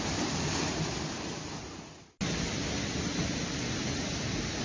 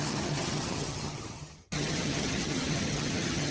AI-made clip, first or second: second